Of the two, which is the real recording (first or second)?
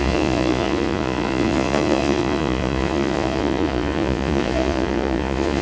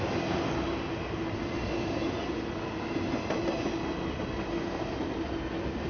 second